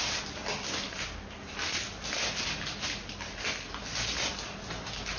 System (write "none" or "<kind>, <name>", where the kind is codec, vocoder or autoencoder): none